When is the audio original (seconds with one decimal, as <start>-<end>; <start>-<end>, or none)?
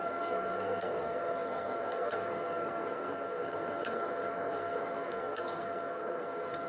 none